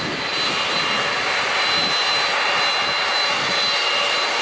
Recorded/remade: recorded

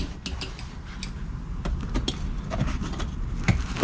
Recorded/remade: recorded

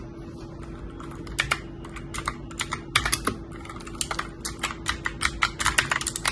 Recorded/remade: recorded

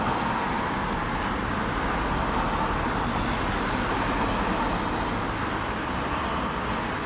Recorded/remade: recorded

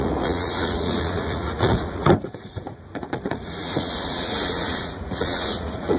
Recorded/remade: remade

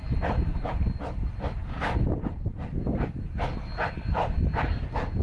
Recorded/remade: recorded